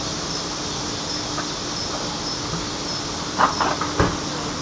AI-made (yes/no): no